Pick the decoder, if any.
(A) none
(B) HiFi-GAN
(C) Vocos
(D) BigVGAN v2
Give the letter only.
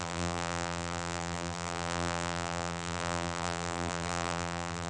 D